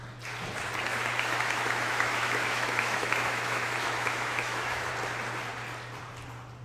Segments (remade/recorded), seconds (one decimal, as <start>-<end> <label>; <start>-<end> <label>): 0.0-0.9 recorded; 0.9-4.9 remade; 4.9-6.6 recorded